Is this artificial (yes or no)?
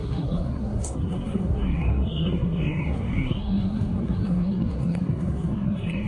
yes